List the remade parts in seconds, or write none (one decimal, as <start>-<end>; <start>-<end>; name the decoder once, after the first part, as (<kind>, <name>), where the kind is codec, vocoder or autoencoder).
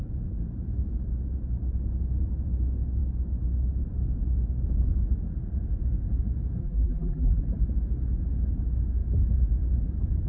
6.6-7.4 (vocoder, BigVGAN v2)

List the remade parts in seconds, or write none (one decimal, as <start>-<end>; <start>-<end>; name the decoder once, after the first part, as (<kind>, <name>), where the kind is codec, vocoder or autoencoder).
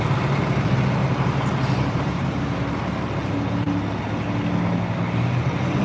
1.0-2.4 (vocoder, BigVGAN v2)